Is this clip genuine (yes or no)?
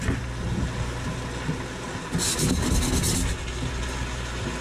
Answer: yes